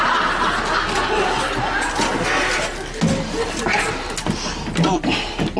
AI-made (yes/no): no